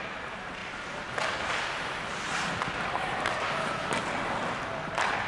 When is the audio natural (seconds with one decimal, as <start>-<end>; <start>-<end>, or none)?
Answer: 0.0-5.3